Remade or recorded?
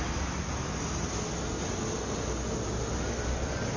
recorded